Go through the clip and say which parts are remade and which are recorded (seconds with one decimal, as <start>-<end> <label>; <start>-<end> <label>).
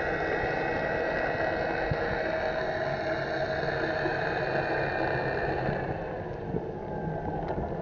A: 0.0-7.8 recorded